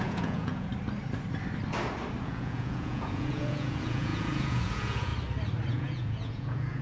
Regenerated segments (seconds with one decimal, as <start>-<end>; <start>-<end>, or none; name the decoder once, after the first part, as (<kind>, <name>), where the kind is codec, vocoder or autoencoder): 0.0-0.7 (vocoder, Vocos); 2.2-5.1; 5.7-6.8

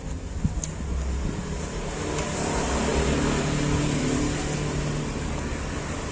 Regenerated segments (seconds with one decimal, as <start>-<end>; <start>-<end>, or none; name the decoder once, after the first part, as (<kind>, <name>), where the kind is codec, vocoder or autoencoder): none